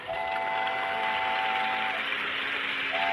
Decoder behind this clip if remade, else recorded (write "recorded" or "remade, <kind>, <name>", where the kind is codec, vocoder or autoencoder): recorded